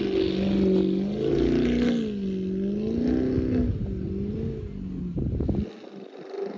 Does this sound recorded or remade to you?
recorded